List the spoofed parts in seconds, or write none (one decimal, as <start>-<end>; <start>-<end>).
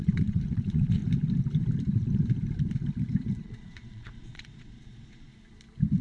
0.0-1.0; 3.4-5.3